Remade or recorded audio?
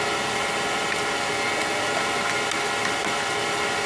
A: recorded